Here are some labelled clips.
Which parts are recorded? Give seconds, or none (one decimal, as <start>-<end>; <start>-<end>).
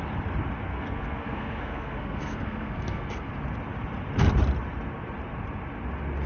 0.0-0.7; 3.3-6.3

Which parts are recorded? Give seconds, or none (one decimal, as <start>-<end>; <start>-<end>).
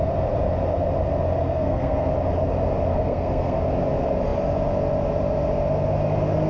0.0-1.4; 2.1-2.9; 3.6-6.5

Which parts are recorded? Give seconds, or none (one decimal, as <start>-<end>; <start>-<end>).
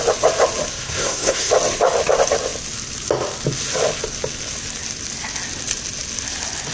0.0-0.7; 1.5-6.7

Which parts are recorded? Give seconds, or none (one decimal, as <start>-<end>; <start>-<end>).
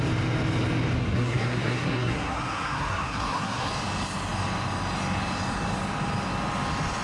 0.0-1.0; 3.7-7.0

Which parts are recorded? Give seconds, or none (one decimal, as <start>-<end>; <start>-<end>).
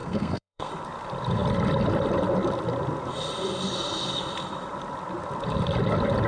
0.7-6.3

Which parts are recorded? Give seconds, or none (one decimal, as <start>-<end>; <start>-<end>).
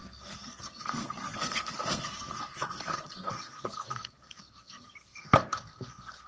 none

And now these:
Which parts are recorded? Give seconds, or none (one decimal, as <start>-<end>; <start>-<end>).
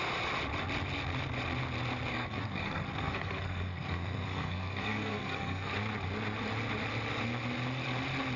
0.0-2.1; 5.7-8.4